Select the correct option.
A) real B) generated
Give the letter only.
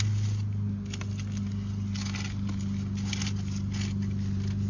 A